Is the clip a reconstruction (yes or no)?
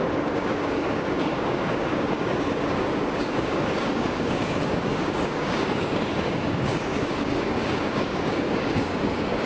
yes